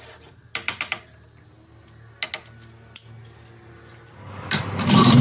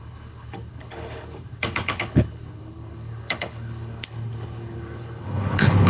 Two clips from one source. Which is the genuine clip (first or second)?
first